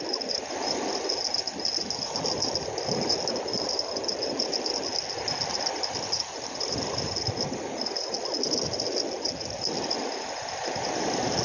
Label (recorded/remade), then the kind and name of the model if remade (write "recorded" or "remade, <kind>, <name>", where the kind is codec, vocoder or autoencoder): recorded